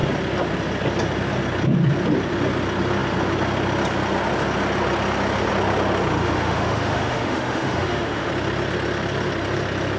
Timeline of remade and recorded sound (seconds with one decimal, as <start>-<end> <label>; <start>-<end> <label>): 0.0-6.2 recorded; 6.2-8.3 remade; 8.3-10.0 recorded